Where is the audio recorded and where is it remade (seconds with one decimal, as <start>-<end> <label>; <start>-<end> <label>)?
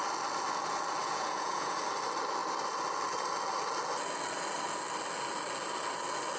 0.0-1.0 recorded; 1.0-1.8 remade; 1.8-6.4 recorded